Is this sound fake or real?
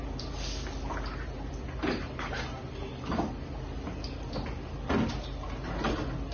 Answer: real